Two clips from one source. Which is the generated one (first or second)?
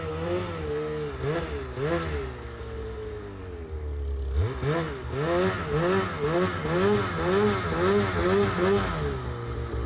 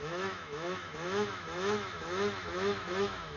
second